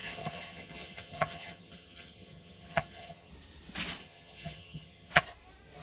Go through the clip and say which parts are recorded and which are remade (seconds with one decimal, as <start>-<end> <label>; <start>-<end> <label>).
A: 0.0-3.3 remade; 3.3-4.0 recorded; 4.0-5.2 remade; 5.2-5.8 recorded